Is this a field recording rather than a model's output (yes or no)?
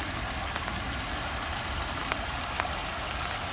yes